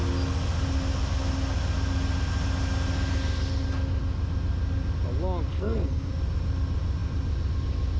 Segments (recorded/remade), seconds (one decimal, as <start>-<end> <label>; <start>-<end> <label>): 0.0-5.5 recorded; 5.5-6.1 remade; 6.1-8.0 recorded

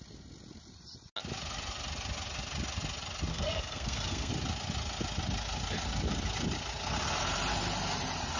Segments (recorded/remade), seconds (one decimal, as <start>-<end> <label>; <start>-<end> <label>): 0.0-3.3 recorded; 3.3-4.3 remade; 4.3-8.4 recorded

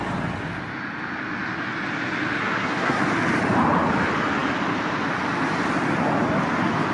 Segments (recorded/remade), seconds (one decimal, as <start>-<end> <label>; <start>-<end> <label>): 0.0-2.4 recorded; 2.4-3.0 remade; 3.0-6.9 recorded